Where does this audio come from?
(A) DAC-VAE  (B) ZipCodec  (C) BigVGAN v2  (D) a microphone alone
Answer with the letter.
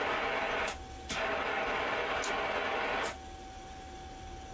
D